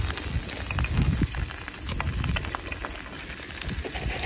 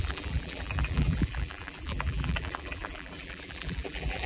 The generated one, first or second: second